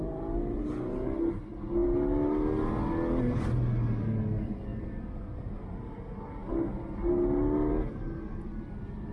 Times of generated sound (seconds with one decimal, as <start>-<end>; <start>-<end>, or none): none